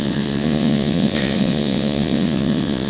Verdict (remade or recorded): remade